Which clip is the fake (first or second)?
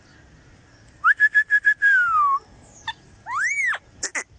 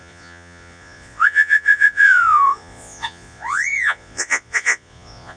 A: second